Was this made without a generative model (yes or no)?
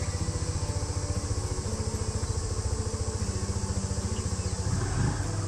yes